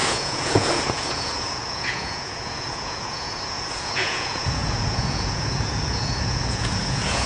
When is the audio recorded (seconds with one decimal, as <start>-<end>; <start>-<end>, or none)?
none